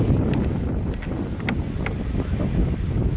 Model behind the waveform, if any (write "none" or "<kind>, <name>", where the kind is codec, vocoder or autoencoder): none